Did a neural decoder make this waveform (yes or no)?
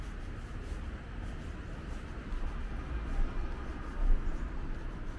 no